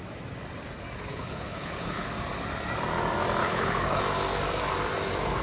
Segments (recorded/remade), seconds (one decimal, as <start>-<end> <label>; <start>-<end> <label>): 0.0-1.1 recorded; 1.1-2.1 remade; 2.1-3.4 recorded; 3.4-4.0 remade; 4.0-5.4 recorded